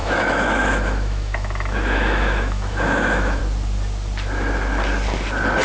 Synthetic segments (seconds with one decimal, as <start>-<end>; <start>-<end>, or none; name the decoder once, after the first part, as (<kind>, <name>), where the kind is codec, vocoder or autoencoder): 0.0-3.4 (autoencoder, DAC-VAE)